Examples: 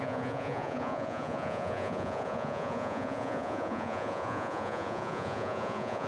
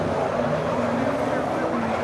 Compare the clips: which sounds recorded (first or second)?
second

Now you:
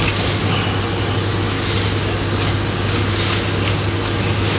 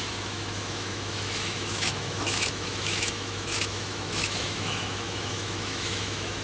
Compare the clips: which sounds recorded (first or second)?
first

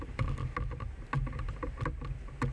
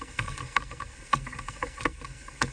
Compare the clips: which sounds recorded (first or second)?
first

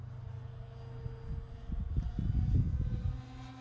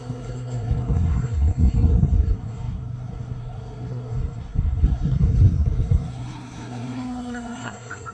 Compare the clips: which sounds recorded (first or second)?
first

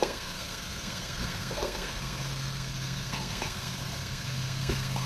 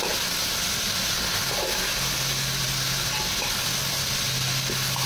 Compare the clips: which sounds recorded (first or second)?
second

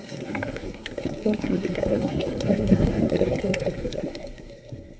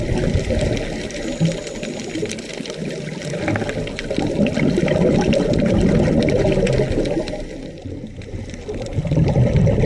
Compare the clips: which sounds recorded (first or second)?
second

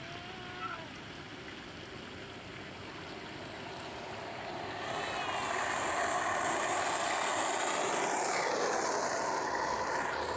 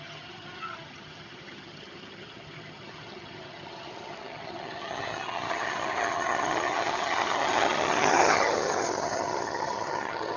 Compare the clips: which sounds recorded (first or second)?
first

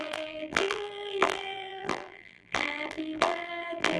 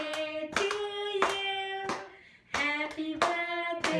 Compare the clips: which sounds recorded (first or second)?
second